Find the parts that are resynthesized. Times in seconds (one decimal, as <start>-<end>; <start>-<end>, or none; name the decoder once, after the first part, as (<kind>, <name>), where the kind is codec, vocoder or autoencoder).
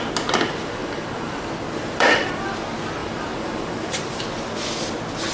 0.8-1.4 (vocoder, BigVGAN v2); 1.8-2.3; 3.0-4.2